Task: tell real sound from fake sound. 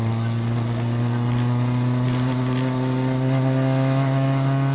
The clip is real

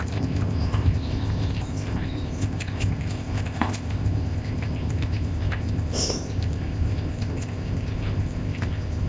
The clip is fake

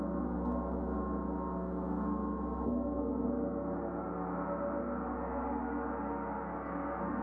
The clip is real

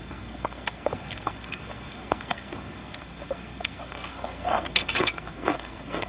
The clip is fake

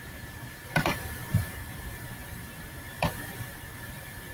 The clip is fake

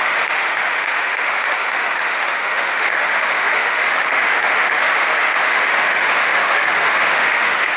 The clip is fake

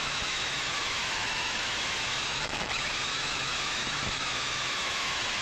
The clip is fake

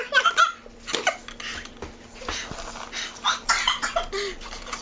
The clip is real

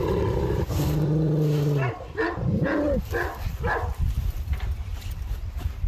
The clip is real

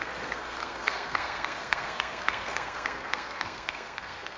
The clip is fake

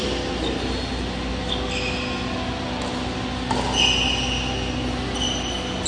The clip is real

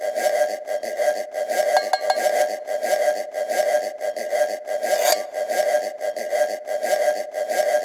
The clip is real